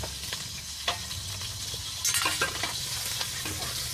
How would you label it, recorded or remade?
recorded